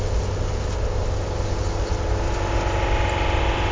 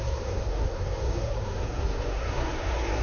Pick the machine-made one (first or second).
second